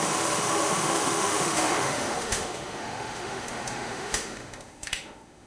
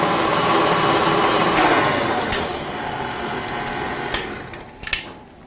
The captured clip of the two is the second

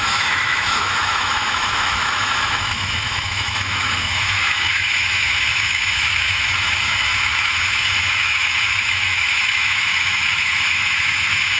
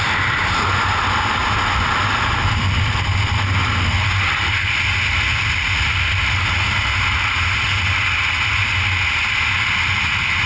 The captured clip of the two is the second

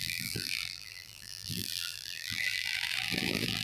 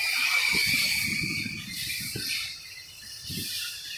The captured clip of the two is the second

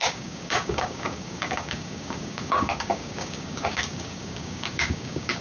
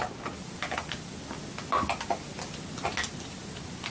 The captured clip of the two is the second